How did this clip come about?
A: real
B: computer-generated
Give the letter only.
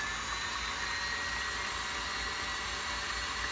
A